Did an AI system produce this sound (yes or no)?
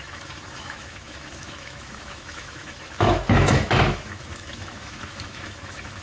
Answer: yes